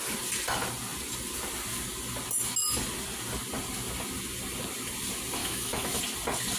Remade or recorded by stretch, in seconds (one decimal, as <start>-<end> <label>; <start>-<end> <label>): 0.0-5.4 recorded; 5.4-6.0 remade; 6.0-6.6 recorded